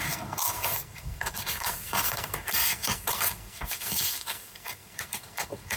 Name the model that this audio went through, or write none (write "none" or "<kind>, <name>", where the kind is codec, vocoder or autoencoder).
codec, SNAC